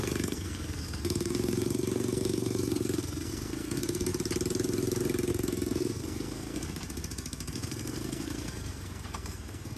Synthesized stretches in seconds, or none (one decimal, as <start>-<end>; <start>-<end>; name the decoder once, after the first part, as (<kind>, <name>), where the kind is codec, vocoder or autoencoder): 0.0-4.1 (codec, SNAC); 5.3-9.8